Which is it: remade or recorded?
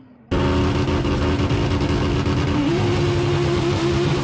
recorded